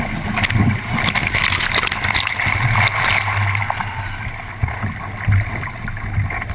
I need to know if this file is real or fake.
real